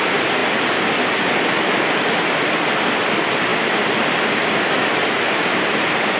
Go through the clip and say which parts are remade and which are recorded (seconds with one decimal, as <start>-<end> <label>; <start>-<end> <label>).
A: 0.0-6.2 recorded